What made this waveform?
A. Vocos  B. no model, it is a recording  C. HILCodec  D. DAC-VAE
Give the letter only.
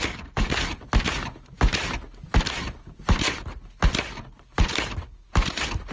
B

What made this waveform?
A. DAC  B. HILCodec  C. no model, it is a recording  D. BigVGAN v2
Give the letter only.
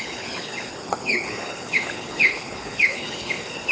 B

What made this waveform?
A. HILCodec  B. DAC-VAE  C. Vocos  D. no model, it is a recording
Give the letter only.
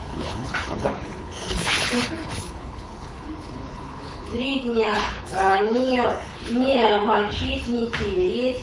A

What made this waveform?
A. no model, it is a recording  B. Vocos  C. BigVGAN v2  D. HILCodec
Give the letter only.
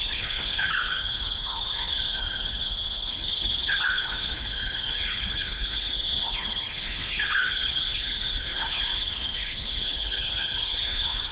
D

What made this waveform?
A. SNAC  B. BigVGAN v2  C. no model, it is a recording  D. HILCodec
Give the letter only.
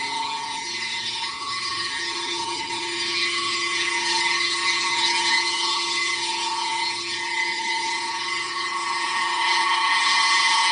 D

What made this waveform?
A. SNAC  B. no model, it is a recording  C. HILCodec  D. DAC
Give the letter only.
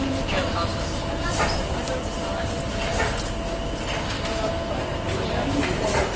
B